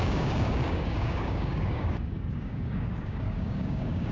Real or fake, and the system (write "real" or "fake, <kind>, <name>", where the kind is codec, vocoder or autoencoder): fake, codec, DAC